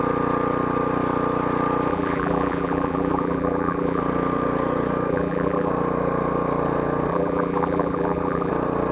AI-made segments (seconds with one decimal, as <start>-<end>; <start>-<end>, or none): 1.9-4.0; 5.1-5.7; 7.1-8.5